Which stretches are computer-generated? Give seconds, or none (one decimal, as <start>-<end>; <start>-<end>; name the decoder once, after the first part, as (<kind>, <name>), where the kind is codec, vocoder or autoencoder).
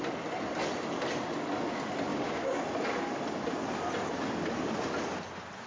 2.1-2.6 (codec, DAC)